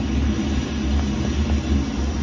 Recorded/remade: recorded